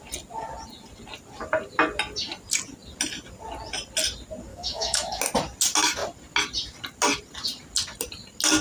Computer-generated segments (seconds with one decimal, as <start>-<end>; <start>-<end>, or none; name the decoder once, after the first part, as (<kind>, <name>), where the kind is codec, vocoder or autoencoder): 4.5-5.2 (autoencoder, DAC-VAE)